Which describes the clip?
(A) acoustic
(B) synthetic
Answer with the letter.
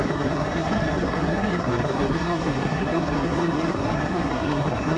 B